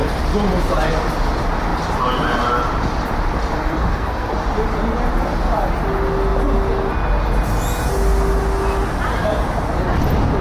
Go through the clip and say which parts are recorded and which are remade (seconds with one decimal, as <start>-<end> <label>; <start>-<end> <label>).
0.0-3.5 recorded; 3.5-4.3 remade; 4.3-10.4 recorded